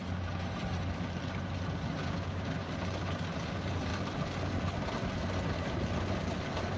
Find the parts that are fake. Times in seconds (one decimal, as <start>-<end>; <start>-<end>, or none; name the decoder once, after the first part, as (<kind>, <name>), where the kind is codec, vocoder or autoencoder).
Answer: 2.0-2.7 (codec, DAC)